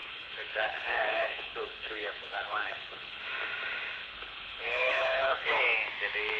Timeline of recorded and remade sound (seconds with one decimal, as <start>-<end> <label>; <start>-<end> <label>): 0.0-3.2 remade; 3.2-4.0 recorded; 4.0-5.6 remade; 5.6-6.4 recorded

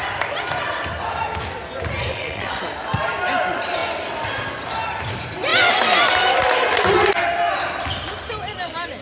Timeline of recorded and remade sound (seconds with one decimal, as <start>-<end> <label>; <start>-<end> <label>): 0.0-2.1 recorded; 2.1-2.6 remade; 2.6-9.0 recorded

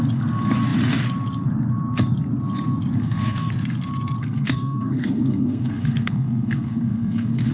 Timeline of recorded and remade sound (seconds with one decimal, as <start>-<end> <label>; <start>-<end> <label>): 0.0-3.0 recorded; 3.0-3.5 remade; 3.5-4.2 recorded; 4.2-7.5 remade

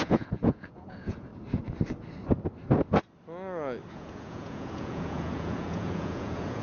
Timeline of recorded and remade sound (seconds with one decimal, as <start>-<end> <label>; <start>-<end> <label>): 0.0-1.3 remade; 1.3-3.9 recorded; 3.9-6.6 remade

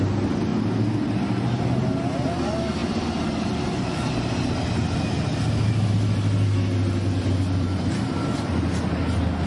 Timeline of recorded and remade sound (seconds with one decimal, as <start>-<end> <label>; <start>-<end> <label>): 0.0-9.5 recorded

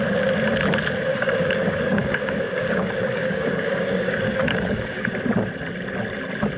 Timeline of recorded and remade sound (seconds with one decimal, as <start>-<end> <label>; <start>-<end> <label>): 0.0-1.1 recorded; 1.1-5.1 remade; 5.1-6.6 recorded

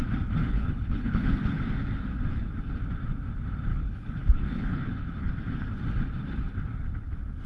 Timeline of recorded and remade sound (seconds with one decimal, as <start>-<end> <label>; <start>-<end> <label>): 0.0-0.4 recorded; 0.4-1.6 remade; 1.6-3.7 recorded; 3.7-5.3 remade; 5.3-7.5 recorded